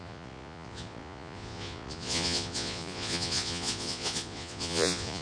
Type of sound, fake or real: fake